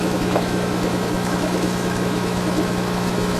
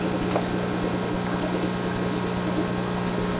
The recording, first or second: second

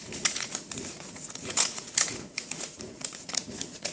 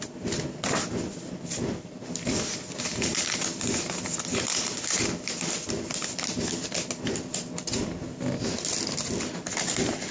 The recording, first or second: second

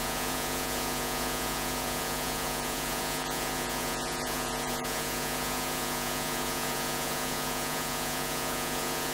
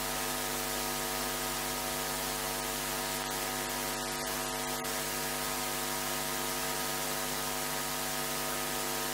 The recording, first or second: second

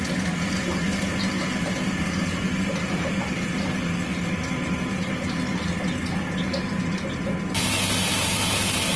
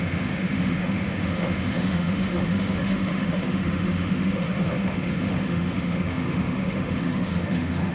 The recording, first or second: first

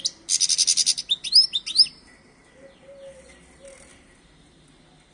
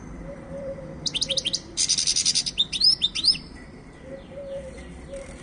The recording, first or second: first